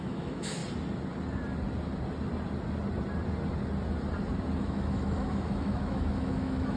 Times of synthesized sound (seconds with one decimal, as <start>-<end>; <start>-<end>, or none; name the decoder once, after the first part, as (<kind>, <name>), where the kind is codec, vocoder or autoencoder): 0.0-0.6 (autoencoder, DAC-VAE); 4.6-6.8